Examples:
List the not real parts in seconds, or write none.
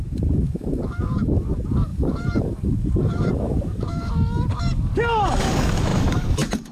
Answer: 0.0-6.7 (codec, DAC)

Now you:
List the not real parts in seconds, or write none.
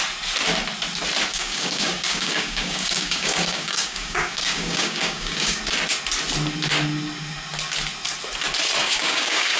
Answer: 1.3-5.6 (codec, DAC); 8.8-9.6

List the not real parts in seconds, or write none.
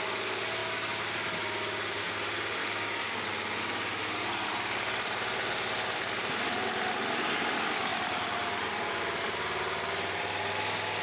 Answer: 2.6-3.3 (codec, DAC)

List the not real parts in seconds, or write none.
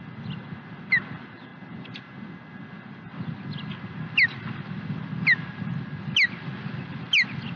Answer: none